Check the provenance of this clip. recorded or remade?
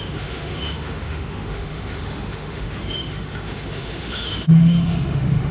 remade